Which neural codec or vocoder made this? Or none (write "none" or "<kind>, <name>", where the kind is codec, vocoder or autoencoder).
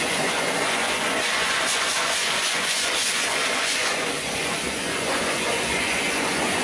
vocoder, Vocos